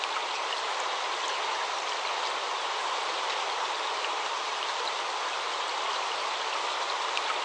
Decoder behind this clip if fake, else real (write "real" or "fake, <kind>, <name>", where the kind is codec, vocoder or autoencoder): real